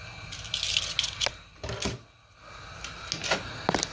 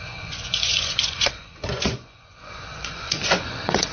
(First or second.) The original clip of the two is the first